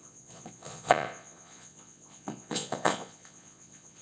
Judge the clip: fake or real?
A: fake